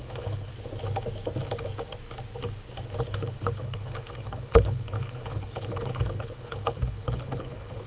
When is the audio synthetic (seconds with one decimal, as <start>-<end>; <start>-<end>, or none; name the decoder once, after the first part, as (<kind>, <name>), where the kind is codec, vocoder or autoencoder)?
0.0-0.5 (codec, HILCodec); 3.0-7.9